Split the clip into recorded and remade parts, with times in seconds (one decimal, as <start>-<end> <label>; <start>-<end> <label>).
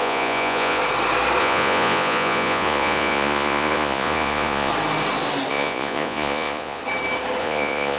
0.0-0.8 remade; 0.8-1.4 recorded; 1.4-4.7 remade; 4.7-5.5 recorded; 5.5-6.8 remade; 6.8-7.4 recorded; 7.4-8.0 remade